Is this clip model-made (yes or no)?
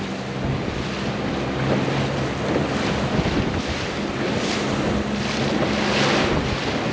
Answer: no